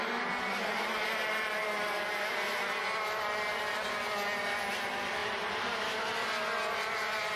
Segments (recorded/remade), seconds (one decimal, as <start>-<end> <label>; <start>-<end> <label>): 0.0-5.2 recorded; 5.2-6.0 remade; 6.0-7.4 recorded